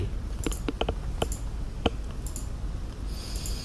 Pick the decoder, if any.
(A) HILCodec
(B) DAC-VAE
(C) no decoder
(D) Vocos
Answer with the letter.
C